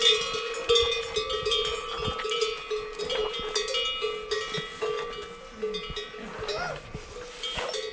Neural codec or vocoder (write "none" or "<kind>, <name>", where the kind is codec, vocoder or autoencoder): none